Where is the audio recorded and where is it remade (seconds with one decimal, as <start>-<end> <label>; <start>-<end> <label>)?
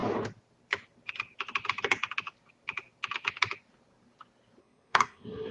0.0-4.6 recorded; 4.6-5.5 remade